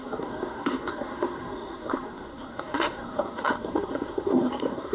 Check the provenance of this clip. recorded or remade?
remade